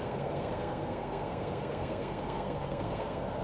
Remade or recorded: remade